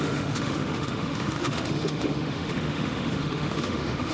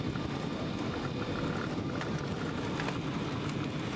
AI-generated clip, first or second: first